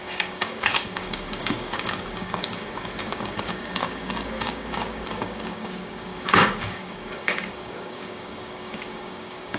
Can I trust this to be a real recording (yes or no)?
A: no